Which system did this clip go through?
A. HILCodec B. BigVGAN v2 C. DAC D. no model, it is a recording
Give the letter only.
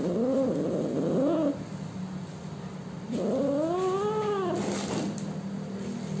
D